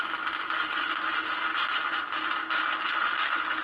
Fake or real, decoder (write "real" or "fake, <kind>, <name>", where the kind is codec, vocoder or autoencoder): real